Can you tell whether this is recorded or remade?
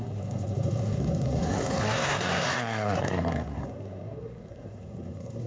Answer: remade